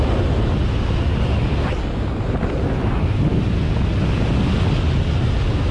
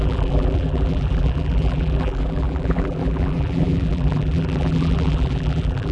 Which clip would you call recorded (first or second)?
first